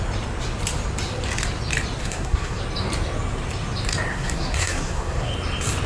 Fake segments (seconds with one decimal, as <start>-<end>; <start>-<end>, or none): 2.0-2.6; 4.1-5.3